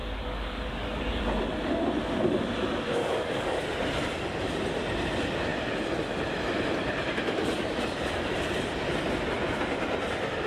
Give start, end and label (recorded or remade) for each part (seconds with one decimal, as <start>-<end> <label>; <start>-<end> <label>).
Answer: 0.0-1.2 remade; 1.2-3.0 recorded; 3.0-3.6 remade; 3.6-10.5 recorded